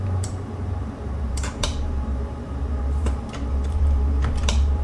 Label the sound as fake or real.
fake